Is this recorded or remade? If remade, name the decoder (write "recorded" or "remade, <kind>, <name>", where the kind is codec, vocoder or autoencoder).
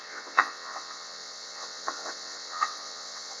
remade, vocoder, WaveNeXt